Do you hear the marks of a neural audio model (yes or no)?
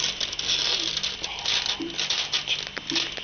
no